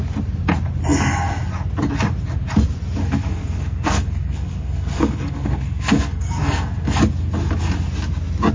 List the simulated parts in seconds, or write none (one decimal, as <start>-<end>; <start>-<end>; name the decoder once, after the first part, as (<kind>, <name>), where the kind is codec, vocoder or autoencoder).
3.0-7.0 (codec, SNAC)